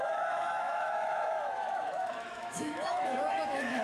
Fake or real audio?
fake